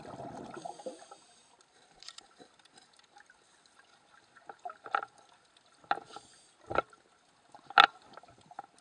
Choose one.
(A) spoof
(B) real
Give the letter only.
B